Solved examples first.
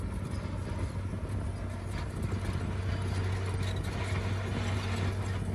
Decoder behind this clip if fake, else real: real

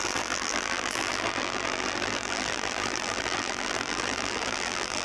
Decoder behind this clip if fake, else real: fake, vocoder, BigVGAN v2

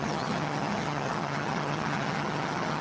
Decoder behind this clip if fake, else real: fake, vocoder, HiFi-GAN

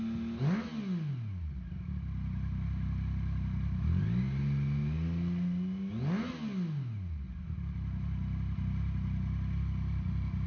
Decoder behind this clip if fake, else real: real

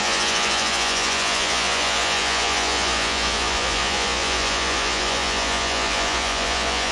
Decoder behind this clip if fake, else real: fake, vocoder, Vocos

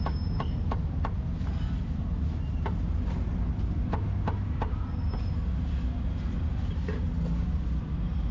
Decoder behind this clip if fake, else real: real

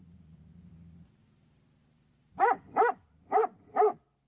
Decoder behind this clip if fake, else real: real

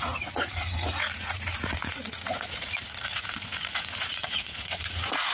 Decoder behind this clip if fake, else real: fake, vocoder, Vocos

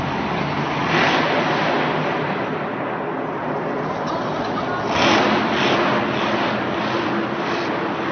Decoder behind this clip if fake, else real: real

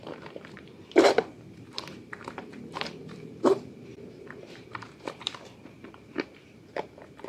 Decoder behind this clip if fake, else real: fake, vocoder, BigVGAN v2